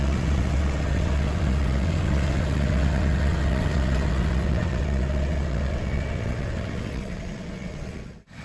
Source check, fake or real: fake